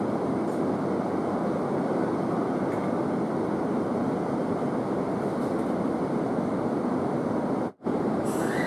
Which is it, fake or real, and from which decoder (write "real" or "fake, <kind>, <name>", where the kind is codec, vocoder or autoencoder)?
real